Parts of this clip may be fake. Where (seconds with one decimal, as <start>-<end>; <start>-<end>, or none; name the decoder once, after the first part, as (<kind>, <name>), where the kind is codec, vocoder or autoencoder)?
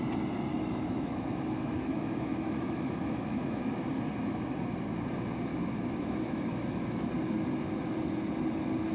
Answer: 0.5-3.9 (autoencoder, DAC-VAE); 5.5-7.1